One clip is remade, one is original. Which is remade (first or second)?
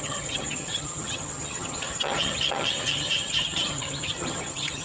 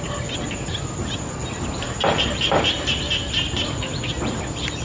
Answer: first